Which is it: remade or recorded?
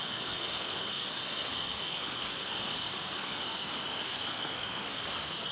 remade